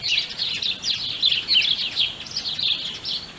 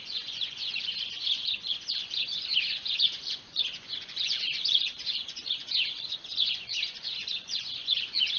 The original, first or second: first